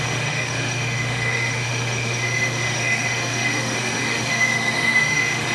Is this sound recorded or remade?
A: remade